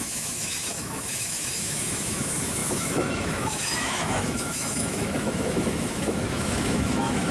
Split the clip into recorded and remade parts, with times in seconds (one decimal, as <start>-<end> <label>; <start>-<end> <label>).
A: 0.0-7.3 remade